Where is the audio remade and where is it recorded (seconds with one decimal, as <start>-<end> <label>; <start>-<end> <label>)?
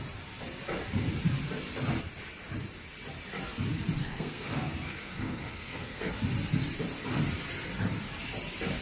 0.0-4.0 recorded; 4.0-6.1 remade; 6.1-8.8 recorded